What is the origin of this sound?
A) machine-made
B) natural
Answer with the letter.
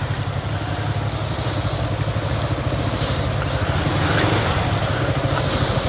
B